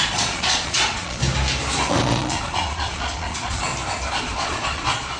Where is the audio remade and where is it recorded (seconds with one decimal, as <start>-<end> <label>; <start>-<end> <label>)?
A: 0.0-1.2 remade; 1.2-1.9 recorded; 1.9-3.7 remade; 3.7-4.2 recorded; 4.2-5.2 remade